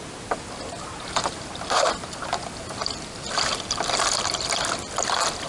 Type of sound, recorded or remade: recorded